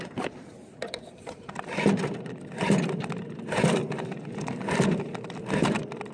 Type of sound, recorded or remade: remade